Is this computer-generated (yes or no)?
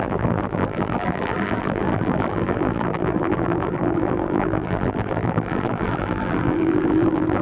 yes